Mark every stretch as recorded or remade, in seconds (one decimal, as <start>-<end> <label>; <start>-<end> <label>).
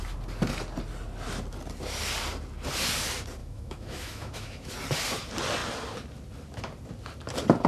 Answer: 0.0-3.4 recorded; 3.4-4.7 remade; 4.7-7.7 recorded